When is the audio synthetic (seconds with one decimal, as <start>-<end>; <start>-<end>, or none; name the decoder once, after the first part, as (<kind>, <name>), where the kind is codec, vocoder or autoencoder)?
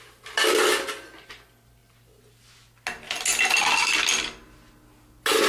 none